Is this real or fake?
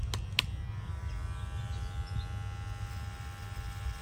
real